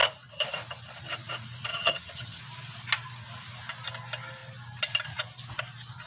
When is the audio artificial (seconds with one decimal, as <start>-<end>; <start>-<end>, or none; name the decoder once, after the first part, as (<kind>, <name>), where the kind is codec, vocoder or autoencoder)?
1.7-2.4 (vocoder, HiFi-GAN)